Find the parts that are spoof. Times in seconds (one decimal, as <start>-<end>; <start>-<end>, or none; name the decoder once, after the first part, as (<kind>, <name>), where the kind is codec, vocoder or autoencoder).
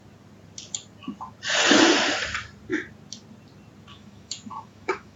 3.9-5.2 (autoencoder, DAC-VAE)